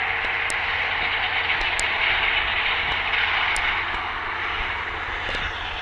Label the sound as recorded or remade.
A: recorded